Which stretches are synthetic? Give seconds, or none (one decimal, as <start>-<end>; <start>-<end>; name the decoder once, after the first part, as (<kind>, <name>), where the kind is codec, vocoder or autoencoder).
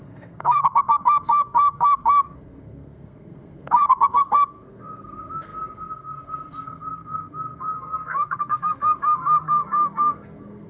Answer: 0.0-10.7 (codec, SNAC)